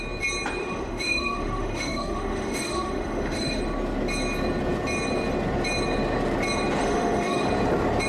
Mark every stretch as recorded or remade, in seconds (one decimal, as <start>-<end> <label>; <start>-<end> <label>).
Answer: 0.0-0.6 recorded; 0.6-3.6 remade; 3.6-6.8 recorded; 6.8-7.5 remade; 7.5-8.1 recorded

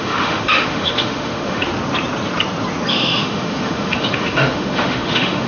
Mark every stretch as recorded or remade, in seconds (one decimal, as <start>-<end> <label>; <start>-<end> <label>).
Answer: 0.0-1.7 remade; 1.7-2.9 recorded; 2.9-5.5 remade

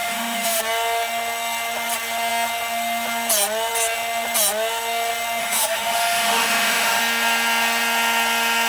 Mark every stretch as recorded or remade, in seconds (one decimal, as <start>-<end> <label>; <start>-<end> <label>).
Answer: 0.0-0.6 remade; 0.6-5.4 recorded; 5.4-7.0 remade; 7.0-8.7 recorded

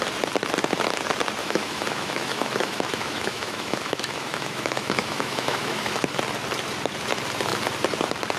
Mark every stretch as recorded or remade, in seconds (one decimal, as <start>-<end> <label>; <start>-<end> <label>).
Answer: 0.0-1.4 recorded; 1.4-6.1 remade; 6.1-8.4 recorded

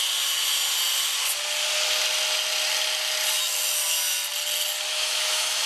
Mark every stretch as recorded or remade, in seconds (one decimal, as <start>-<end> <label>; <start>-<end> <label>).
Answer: 0.0-4.9 recorded; 4.9-5.7 remade

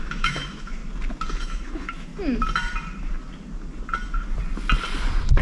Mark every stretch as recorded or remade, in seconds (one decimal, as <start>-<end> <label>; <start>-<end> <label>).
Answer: 0.0-0.8 remade; 0.8-1.4 recorded; 1.4-2.1 remade; 2.1-5.4 recorded